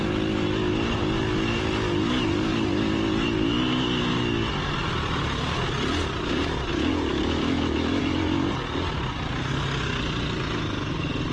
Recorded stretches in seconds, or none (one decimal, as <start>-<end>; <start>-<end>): 0.0-7.1; 8.0-11.3